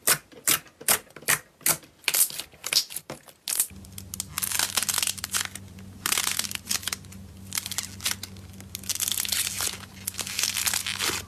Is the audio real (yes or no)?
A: yes